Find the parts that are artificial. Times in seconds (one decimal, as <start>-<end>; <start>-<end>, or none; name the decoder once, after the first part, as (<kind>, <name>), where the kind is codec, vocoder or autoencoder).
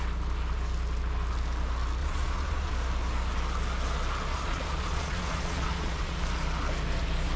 2.0-2.7 (vocoder, Vocos); 4.3-6.2